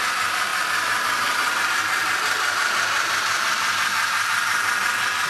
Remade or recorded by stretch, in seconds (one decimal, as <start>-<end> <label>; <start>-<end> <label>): 0.0-5.3 recorded